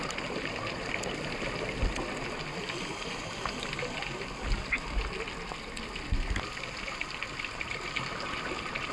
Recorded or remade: recorded